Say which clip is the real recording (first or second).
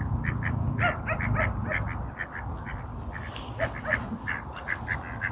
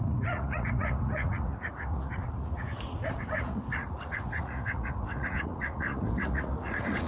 first